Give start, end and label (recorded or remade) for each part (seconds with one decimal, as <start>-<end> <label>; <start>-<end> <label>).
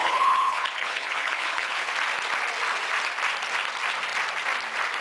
0.0-1.9 remade; 1.9-5.0 recorded